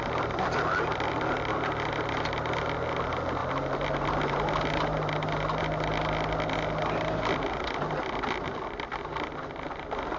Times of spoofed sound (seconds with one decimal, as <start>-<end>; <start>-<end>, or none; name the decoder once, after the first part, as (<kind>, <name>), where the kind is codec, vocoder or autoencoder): none